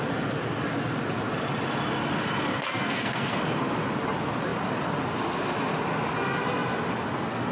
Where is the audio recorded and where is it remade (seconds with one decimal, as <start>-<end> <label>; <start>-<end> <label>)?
0.0-2.5 recorded; 2.5-3.4 remade; 3.4-7.5 recorded